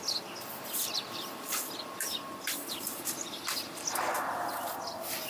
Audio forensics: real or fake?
real